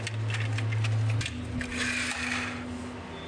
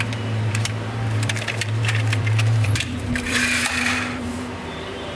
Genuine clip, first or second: first